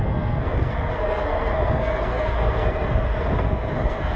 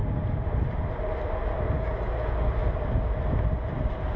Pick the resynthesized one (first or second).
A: first